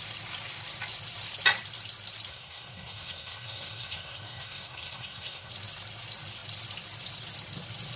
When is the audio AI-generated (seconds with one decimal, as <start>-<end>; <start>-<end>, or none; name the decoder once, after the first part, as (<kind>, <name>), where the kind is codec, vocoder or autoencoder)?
2.3-5.5 (codec, SNAC)